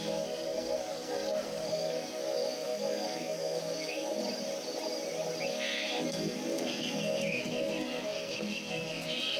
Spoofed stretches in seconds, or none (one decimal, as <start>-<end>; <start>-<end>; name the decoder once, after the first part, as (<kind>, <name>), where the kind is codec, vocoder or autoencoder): 0.0-4.2 (codec, SNAC); 5.5-9.4